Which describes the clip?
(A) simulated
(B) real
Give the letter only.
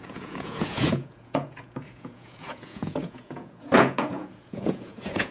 A